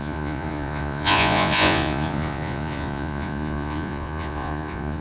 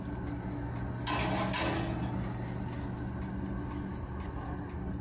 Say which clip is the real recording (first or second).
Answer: second